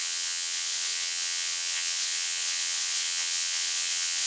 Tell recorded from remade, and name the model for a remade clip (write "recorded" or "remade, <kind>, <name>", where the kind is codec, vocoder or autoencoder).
remade, vocoder, WaveNeXt